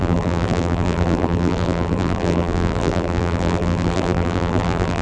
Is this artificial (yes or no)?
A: yes